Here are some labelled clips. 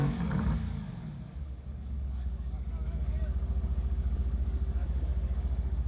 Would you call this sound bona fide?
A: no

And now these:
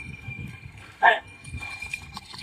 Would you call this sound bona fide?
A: no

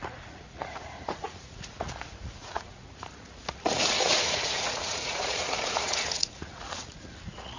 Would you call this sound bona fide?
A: no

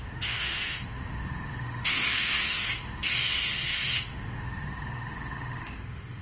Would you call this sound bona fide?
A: no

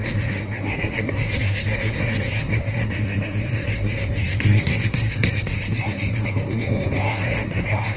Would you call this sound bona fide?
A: no